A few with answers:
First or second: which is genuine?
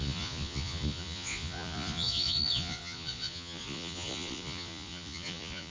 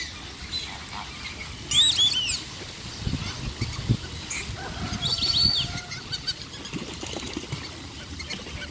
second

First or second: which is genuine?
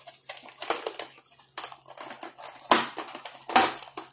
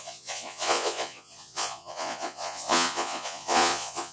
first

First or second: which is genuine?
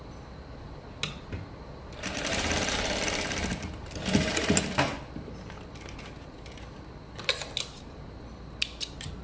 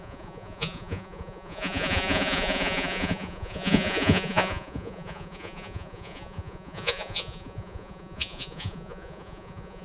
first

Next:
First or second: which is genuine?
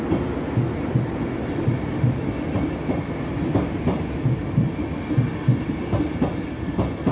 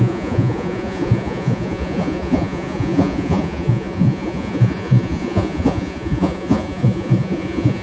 first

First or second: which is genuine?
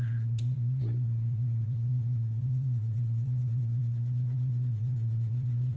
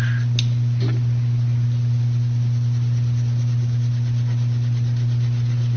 second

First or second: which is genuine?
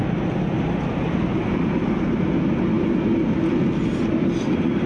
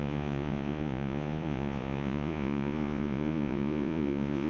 first